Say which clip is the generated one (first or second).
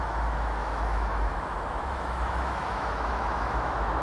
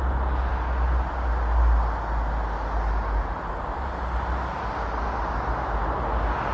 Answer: first